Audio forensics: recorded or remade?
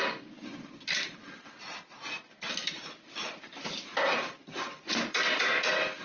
recorded